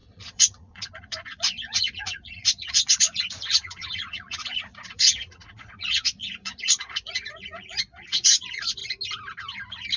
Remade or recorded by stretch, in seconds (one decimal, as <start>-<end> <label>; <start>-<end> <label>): 0.0-8.8 remade; 8.8-10.0 recorded